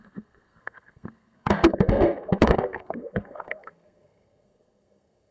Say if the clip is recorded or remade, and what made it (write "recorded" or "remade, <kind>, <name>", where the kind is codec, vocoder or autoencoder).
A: remade, codec, SNAC